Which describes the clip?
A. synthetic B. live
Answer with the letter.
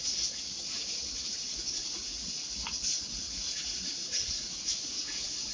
A